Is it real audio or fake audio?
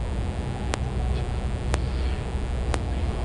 real